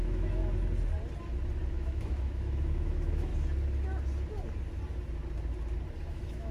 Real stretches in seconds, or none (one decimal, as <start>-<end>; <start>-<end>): 0.4-1.7; 3.3-6.1